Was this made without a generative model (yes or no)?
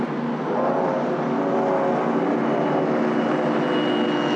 yes